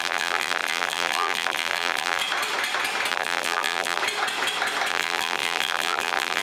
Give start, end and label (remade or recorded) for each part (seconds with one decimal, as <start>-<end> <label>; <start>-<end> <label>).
0.0-2.2 remade; 2.2-3.1 recorded; 3.1-4.0 remade; 4.0-4.9 recorded; 4.9-6.4 remade